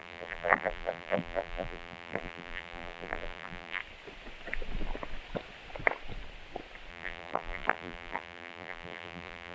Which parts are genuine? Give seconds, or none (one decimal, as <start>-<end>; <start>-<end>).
3.8-6.9